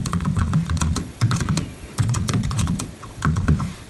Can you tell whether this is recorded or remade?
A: remade